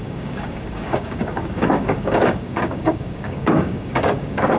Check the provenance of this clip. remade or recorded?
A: remade